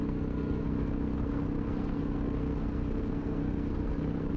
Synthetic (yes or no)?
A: yes